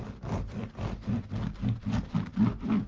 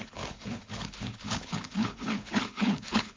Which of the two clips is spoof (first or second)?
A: second